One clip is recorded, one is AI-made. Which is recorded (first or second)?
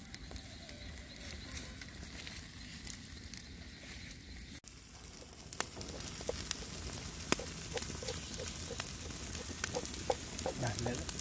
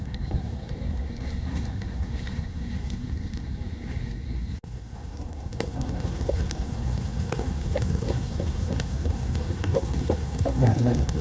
first